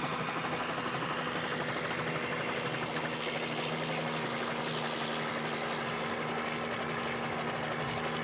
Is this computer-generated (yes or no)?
no